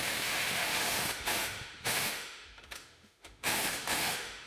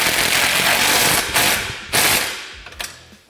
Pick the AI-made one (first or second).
first